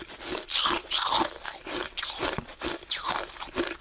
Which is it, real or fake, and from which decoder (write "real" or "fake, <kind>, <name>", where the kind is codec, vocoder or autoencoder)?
real